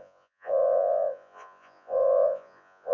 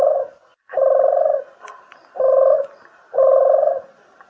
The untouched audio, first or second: second